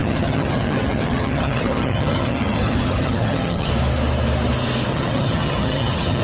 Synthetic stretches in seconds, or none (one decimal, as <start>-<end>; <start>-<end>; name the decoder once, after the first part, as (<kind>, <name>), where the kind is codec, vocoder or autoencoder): 0.0-3.7 (vocoder, HiFi-GAN); 4.9-6.2